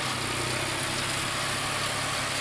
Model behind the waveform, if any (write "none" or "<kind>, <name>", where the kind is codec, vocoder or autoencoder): none